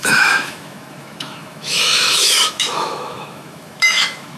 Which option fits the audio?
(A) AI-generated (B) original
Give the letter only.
A